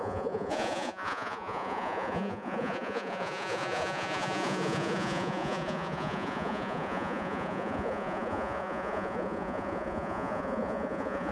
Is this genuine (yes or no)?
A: no